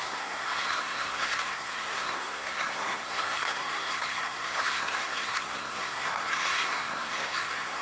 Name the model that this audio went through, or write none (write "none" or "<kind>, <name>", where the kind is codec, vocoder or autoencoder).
codec, SNAC